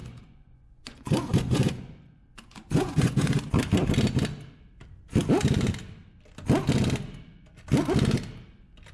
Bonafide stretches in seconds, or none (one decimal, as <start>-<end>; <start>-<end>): 3.5-8.9